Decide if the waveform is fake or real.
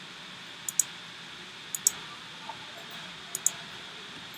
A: real